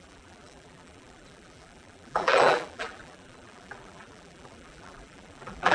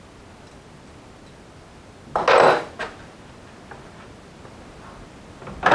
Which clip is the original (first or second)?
second